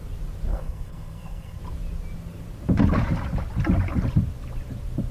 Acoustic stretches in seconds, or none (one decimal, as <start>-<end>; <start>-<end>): 0.0-0.5; 1.6-5.1